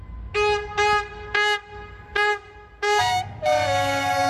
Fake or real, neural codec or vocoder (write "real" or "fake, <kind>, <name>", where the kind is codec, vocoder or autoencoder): real